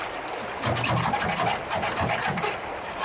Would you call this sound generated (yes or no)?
no